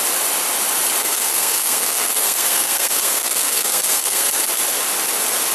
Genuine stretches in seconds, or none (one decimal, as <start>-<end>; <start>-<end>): 0.0-1.0; 4.3-5.5